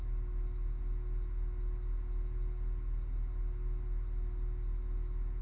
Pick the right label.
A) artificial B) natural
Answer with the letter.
B